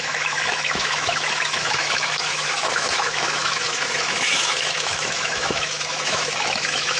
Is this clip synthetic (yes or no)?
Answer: yes